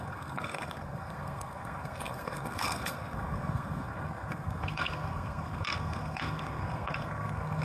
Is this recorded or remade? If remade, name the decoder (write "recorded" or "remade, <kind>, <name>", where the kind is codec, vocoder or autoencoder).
remade, codec, SNAC